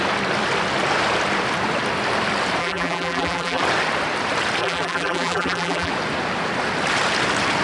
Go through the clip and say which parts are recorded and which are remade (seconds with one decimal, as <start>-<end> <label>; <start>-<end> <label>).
0.0-2.6 recorded; 2.6-3.6 remade; 3.6-4.6 recorded; 4.6-5.9 remade; 5.9-7.6 recorded